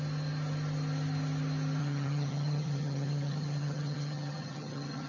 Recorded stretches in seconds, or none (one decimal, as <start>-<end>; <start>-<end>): 0.0-1.8